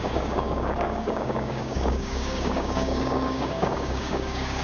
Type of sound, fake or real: fake